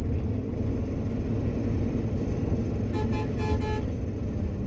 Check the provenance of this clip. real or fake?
real